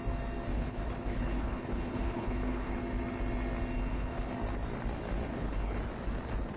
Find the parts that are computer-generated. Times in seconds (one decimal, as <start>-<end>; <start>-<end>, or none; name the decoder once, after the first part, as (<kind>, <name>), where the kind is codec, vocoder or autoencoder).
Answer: 0.5-2.7 (codec, HILCodec); 3.8-4.3; 5.3-5.8